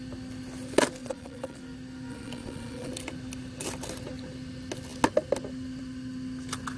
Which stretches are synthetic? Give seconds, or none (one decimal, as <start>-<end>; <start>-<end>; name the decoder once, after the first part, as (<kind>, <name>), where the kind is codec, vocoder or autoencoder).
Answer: 1.0-1.6 (vocoder, Vocos); 2.1-2.9